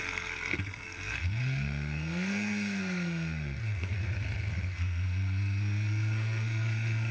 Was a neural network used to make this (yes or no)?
yes